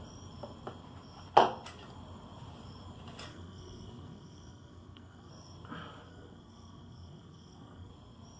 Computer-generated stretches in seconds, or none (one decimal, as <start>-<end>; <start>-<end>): 3.3-5.3; 6.1-7.9